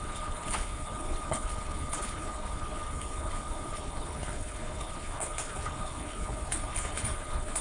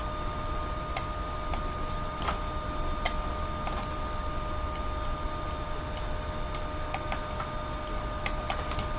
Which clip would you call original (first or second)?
second